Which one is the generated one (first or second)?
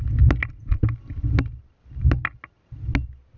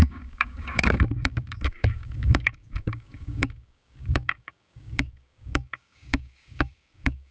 second